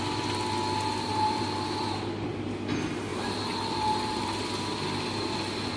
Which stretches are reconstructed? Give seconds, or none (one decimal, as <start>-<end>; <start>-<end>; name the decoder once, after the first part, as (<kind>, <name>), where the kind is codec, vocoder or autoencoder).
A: 1.1-1.8 (vocoder, BigVGAN v2); 3.1-4.5